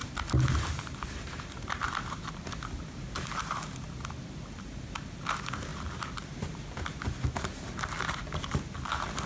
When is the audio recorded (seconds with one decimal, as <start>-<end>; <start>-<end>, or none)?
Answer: 0.0-9.3